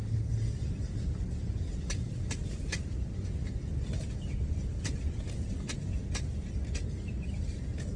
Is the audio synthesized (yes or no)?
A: no